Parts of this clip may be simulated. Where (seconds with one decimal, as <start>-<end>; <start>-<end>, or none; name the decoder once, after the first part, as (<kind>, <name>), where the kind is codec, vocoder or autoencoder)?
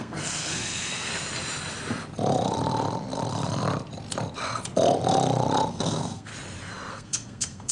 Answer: 0.0-1.1 (codec, SNAC); 5.7-6.3; 6.9-7.7